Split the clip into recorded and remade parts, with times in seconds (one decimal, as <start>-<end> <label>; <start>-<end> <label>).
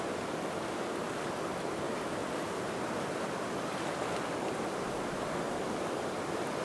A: 0.0-6.6 recorded